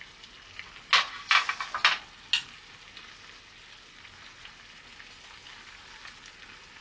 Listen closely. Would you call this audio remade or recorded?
recorded